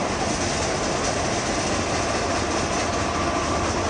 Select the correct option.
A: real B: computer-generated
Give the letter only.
A